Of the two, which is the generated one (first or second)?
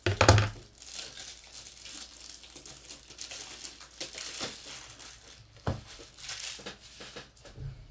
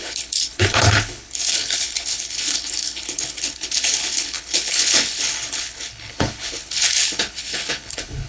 second